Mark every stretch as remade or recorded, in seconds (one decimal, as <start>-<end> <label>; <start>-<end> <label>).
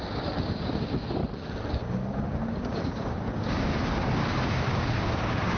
0.0-1.2 remade; 1.2-1.7 recorded; 1.7-5.6 remade